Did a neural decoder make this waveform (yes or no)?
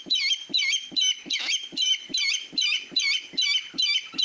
no